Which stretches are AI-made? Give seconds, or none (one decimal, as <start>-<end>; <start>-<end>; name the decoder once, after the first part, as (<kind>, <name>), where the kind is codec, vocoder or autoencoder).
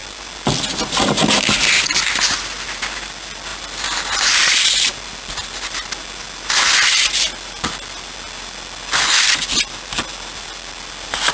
none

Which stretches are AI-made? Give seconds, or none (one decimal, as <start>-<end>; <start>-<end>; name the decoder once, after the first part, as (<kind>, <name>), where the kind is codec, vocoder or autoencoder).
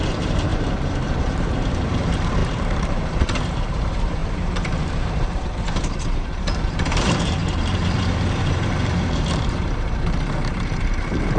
0.0-11.4 (vocoder, BigVGAN v2)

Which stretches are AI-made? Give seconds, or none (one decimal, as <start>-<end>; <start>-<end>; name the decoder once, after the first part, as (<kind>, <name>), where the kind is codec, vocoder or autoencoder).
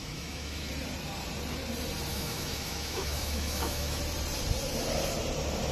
0.0-0.7 (autoencoder, DAC-VAE); 2.1-4.0